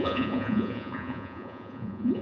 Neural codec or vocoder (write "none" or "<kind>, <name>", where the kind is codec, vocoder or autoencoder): vocoder, Vocos